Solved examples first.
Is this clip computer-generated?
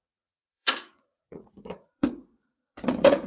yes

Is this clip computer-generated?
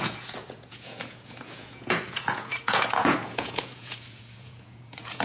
yes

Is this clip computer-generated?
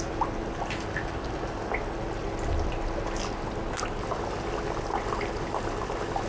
no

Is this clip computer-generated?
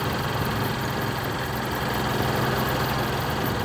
no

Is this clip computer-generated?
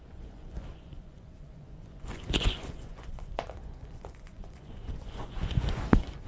yes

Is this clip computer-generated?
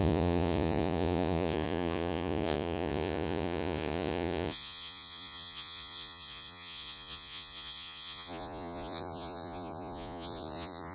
yes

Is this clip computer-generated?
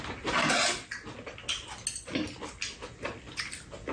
no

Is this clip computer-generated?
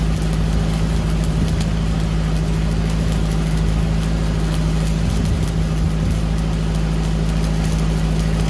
no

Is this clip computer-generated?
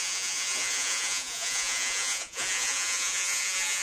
yes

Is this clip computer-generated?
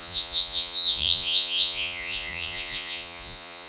yes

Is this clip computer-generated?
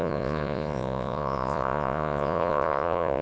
yes